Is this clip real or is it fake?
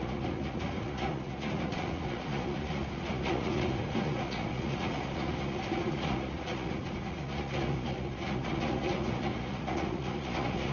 fake